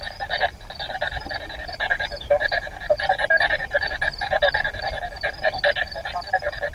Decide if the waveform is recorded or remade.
recorded